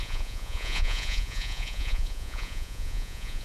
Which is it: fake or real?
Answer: fake